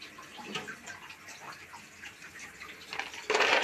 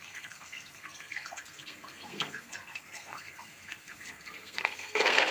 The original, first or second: first